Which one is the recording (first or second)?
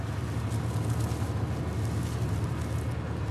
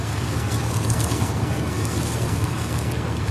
first